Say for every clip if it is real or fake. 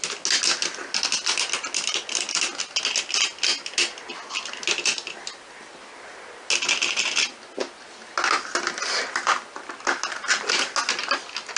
real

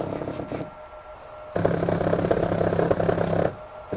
real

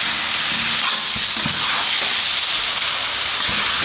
real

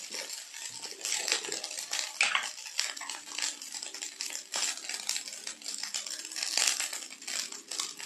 real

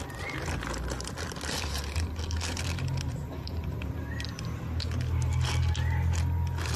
real